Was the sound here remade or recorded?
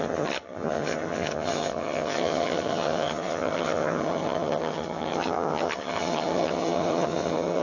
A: remade